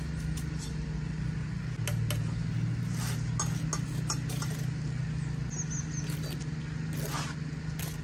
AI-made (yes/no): no